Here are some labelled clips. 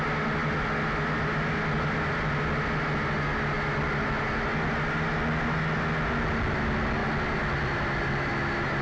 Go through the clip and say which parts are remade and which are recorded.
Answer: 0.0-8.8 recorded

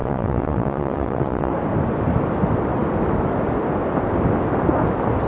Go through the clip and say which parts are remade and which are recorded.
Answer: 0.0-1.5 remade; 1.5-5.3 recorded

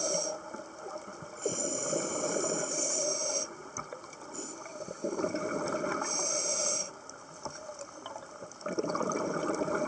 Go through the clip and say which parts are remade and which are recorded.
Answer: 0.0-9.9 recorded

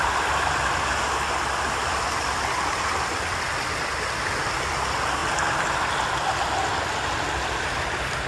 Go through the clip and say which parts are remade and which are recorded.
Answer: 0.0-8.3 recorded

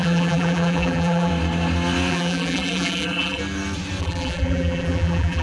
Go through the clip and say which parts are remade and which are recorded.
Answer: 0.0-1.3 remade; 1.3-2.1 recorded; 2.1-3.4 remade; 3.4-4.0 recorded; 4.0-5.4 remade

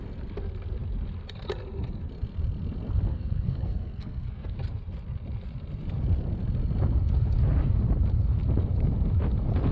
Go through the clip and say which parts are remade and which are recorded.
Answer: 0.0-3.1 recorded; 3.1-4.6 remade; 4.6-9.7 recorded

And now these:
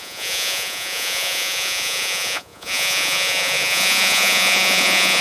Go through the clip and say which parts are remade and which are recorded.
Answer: 0.0-5.2 remade

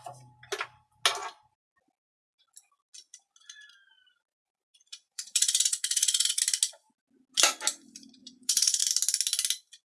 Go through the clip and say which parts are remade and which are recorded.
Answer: 0.0-4.3 recorded; 4.3-6.4 remade; 6.4-8.2 recorded; 8.2-8.8 remade; 8.8-9.8 recorded